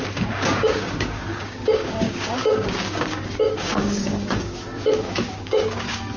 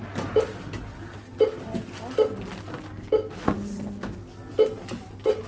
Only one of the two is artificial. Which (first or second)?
first